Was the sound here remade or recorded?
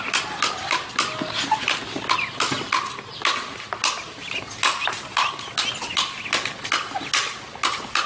recorded